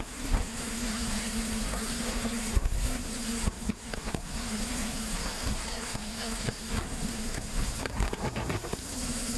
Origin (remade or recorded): remade